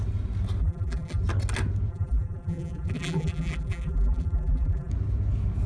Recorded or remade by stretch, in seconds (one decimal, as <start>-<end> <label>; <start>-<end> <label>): 0.0-0.6 recorded; 0.6-1.2 remade; 1.2-1.9 recorded; 1.9-4.9 remade; 4.9-5.7 recorded